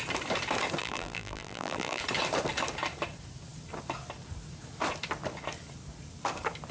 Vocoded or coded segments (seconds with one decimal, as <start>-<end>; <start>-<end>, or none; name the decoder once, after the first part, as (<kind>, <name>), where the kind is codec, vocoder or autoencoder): 0.8-2.0 (vocoder, BigVGAN v2)